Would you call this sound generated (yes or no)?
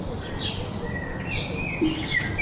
no